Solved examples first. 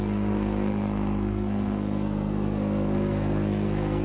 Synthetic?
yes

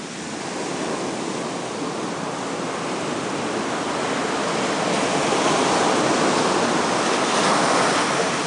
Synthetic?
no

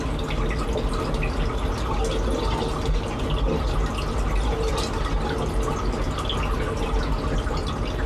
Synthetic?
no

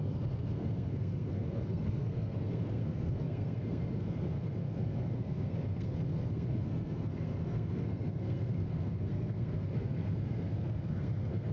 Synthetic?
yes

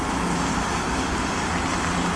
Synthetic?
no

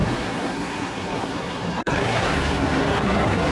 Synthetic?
yes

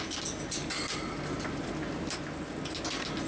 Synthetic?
no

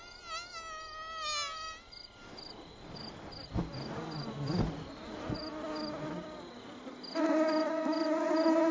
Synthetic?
no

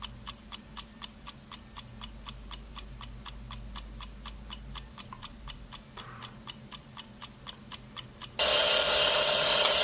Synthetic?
no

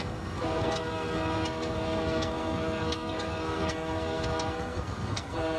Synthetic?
yes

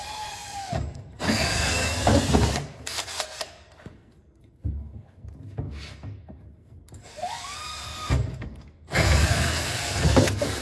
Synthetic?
yes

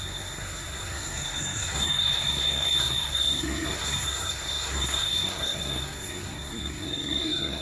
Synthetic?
yes